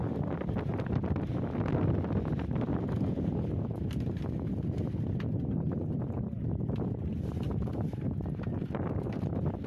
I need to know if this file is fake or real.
real